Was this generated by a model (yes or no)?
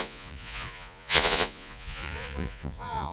yes